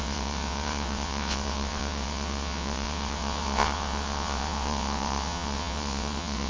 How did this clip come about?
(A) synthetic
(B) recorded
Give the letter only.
A